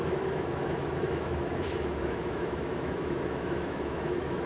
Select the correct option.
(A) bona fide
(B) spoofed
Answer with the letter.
B